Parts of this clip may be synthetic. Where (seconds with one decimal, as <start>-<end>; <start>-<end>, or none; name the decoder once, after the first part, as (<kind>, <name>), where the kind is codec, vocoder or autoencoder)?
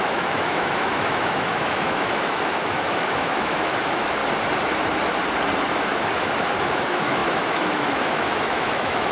0.0-4.2 (autoencoder, DAC-VAE); 6.6-9.1